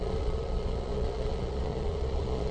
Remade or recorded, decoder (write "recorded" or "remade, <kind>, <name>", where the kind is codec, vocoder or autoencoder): remade, vocoder, Vocos